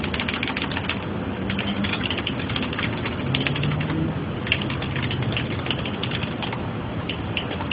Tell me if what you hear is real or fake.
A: real